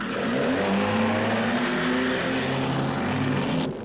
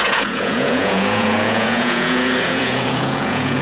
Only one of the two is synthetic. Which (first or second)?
second